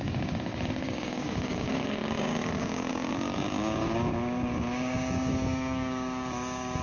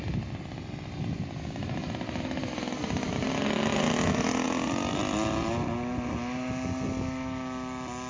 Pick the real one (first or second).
second